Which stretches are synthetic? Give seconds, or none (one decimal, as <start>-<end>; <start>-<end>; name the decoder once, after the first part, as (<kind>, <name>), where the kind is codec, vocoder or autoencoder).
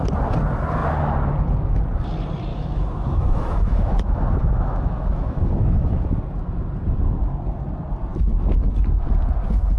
2.5-6.0 (autoencoder, DAC-VAE)